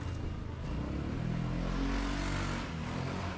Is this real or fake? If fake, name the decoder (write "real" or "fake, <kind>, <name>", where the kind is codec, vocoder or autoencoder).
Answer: real